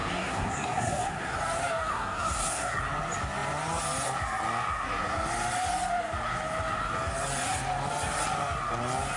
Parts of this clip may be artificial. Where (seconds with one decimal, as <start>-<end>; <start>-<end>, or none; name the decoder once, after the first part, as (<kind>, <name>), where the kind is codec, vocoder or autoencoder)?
0.0-1.4 (codec, SNAC); 1.9-2.8